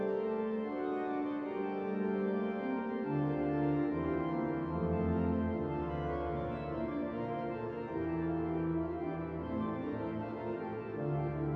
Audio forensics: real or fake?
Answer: real